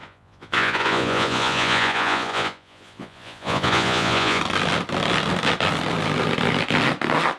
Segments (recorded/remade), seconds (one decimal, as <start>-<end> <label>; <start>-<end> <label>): 0.0-4.4 remade; 4.4-7.4 recorded